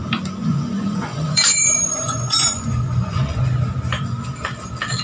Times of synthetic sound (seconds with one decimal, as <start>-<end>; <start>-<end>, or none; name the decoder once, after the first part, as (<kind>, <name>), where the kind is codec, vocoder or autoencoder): 0.4-3.4 (vocoder, Vocos)